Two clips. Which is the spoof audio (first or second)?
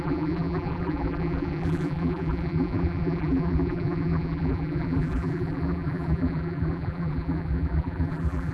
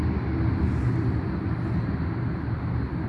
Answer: first